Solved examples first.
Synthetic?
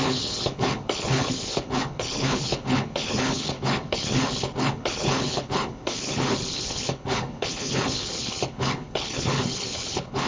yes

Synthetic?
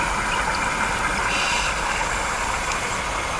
no